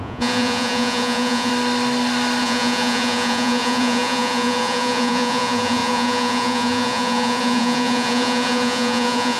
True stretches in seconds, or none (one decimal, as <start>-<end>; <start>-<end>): 1.5-2.4